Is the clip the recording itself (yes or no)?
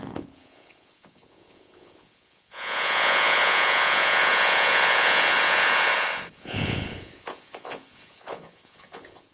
no